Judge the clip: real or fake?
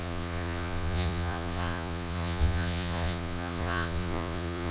fake